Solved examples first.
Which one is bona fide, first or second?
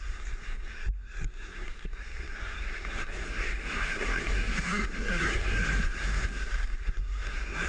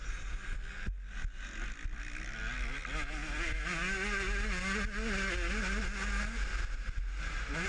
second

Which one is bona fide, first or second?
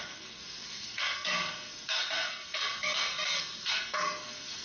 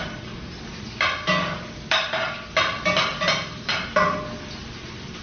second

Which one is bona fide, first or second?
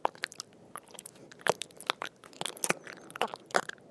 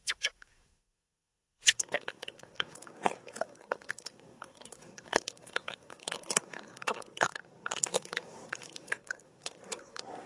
first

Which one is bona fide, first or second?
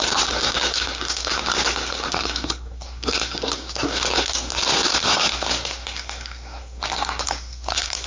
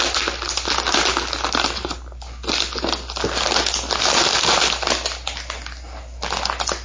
second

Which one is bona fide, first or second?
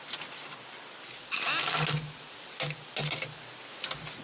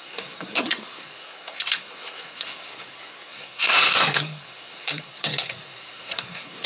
first